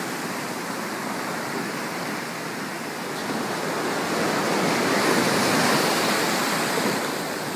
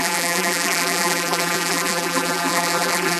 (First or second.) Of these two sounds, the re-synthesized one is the second